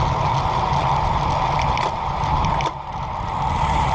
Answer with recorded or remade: recorded